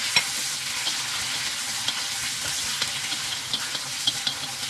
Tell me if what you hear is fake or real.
real